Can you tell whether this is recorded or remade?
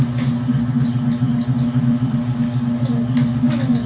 recorded